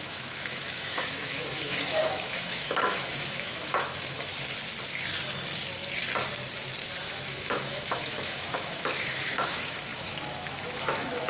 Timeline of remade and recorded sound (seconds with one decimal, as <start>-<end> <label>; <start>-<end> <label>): 0.0-4.3 remade; 4.3-7.0 recorded; 7.0-11.3 remade